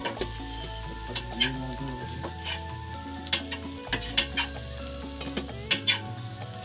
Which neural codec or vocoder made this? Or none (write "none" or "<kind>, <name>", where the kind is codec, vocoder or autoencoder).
none